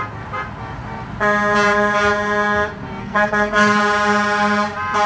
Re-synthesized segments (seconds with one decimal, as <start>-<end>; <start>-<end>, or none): 3.0-3.8